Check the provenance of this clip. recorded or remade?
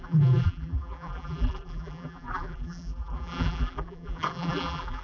remade